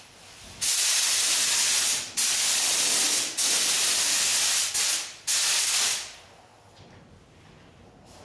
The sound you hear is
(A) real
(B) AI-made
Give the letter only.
A